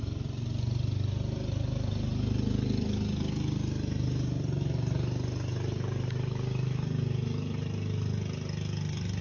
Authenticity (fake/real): real